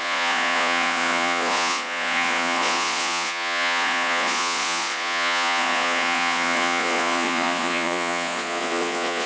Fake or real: fake